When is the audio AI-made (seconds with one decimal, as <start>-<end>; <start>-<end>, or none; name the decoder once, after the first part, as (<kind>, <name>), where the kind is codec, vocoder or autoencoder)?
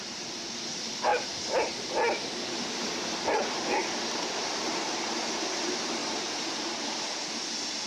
0.0-1.1 (vocoder, BigVGAN v2); 5.1-7.9